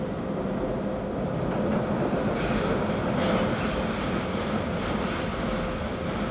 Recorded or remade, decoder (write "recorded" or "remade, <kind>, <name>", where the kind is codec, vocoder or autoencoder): recorded